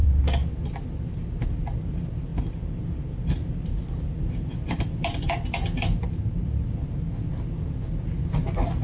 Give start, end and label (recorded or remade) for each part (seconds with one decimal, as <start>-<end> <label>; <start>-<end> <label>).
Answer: 0.0-0.5 remade; 0.5-2.3 recorded; 2.3-3.6 remade; 3.6-8.8 recorded